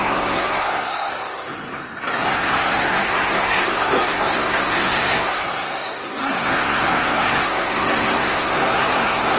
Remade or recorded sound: remade